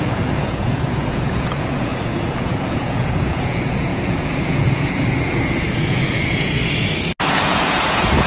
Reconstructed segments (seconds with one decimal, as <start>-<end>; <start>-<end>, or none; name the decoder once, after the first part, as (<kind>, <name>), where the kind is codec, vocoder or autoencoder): 0.0-6.6 (vocoder, Vocos); 7.3-8.3